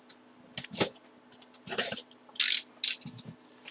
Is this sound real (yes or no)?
yes